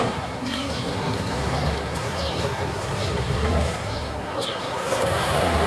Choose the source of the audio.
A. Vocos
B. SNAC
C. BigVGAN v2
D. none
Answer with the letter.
B